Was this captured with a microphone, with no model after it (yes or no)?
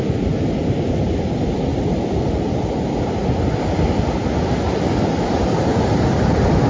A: yes